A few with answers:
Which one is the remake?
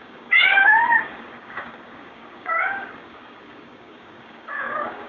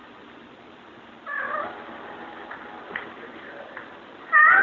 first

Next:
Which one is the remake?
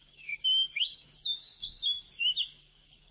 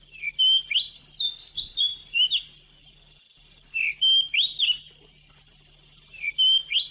first